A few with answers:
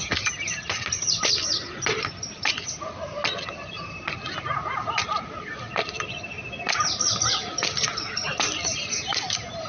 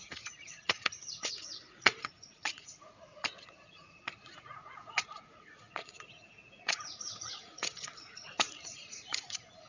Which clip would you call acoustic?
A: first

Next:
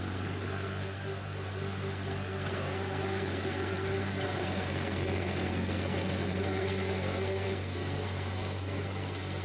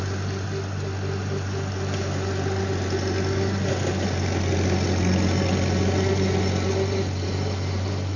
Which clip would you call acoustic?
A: second